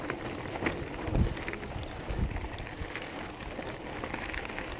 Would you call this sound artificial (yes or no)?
no